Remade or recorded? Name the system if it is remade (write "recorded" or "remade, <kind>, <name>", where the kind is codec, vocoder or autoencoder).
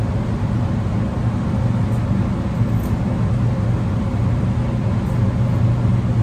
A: recorded